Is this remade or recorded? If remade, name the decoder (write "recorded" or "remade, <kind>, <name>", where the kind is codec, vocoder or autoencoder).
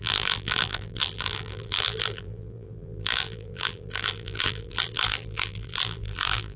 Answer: remade, vocoder, BigVGAN v2